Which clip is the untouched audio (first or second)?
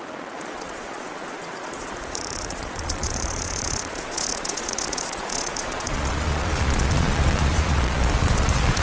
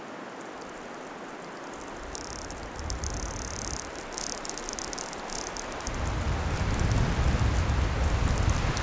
second